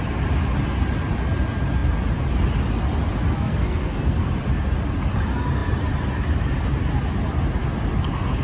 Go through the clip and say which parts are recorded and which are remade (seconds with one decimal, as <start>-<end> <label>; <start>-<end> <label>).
0.0-3.3 recorded; 3.3-4.3 remade; 4.3-8.4 recorded